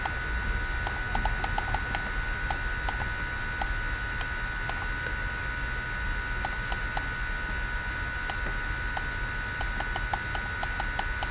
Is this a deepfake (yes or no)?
no